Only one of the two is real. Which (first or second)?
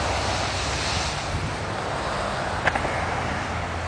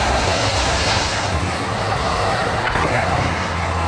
first